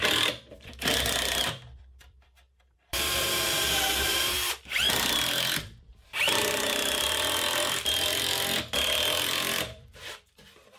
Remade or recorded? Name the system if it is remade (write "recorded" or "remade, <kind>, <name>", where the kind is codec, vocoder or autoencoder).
remade, vocoder, BigVGAN v2